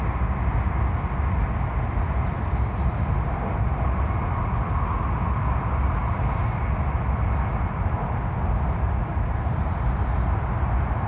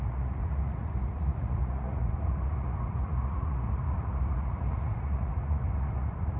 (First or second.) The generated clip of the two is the second